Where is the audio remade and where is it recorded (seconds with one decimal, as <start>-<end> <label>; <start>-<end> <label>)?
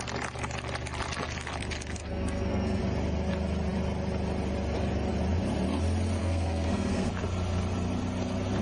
0.0-2.0 recorded; 2.0-2.8 remade; 2.8-6.2 recorded; 6.2-7.1 remade; 7.1-8.6 recorded